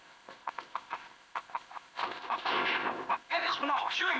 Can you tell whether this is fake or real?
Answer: fake